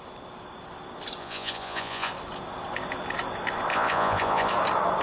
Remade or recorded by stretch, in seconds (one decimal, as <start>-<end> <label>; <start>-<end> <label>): 0.0-1.2 recorded; 1.2-2.1 remade; 2.1-3.7 recorded; 3.7-4.5 remade; 4.5-5.0 recorded